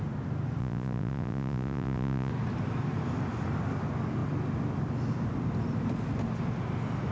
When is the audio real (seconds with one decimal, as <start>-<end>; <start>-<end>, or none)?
0.0-0.6; 2.3-7.1